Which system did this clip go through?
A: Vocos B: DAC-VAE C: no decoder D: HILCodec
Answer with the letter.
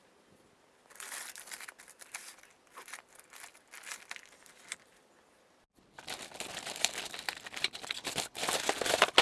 C